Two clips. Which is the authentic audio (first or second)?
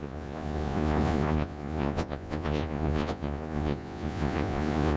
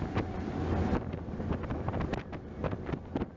second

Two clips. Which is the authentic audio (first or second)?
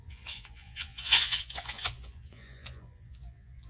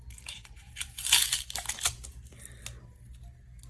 second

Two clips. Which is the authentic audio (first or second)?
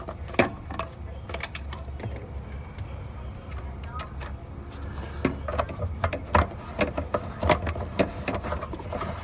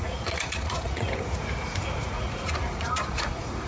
first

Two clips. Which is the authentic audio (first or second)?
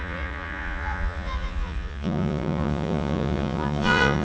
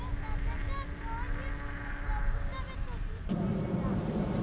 second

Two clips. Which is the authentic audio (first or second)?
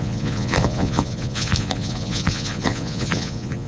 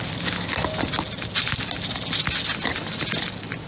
second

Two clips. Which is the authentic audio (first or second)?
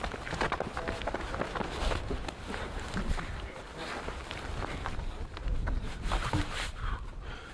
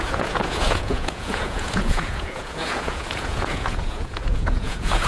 first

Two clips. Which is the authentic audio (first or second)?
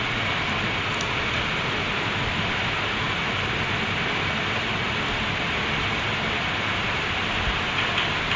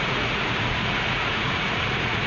first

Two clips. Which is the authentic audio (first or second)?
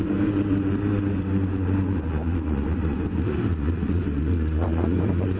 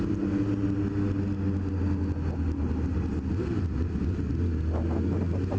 second